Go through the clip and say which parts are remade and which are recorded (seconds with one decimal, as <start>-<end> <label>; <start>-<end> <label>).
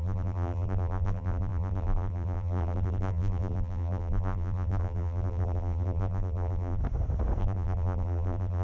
0.0-6.8 remade; 6.8-7.4 recorded; 7.4-8.6 remade